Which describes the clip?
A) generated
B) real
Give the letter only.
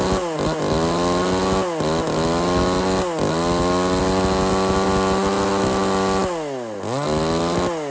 B